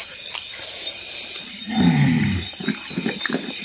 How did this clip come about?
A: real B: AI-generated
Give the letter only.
A